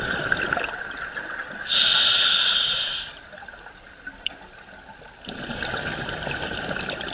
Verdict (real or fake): real